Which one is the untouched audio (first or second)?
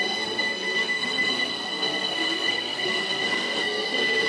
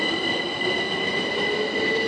second